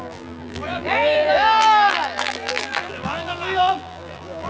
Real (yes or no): no